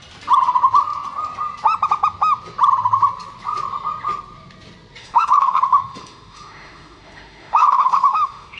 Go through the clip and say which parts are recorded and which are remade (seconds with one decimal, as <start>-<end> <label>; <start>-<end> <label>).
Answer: 0.0-5.0 recorded; 5.0-8.6 remade